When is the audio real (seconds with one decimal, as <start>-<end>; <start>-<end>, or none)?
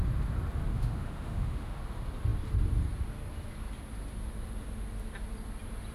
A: 0.0-0.7; 1.8-5.9